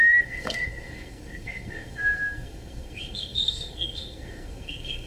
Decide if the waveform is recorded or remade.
remade